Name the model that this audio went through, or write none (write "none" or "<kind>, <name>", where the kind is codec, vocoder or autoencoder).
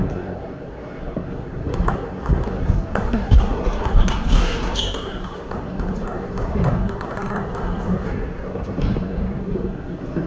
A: codec, SNAC